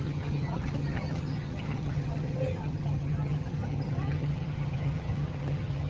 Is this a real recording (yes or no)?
no